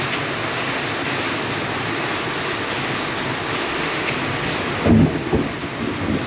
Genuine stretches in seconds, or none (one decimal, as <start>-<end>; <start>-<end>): 0.0-3.6; 4.1-6.3